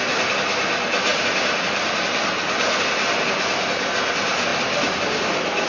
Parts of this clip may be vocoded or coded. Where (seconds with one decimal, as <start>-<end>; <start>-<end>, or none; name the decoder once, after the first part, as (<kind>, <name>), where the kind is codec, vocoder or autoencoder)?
none